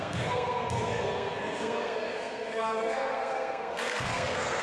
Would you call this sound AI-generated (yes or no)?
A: yes